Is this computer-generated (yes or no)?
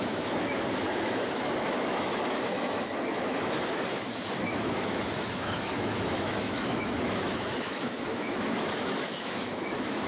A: yes